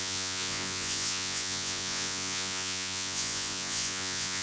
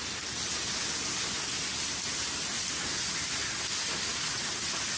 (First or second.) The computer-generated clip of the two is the first